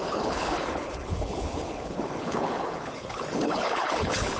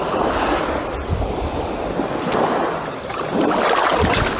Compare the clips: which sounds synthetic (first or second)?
first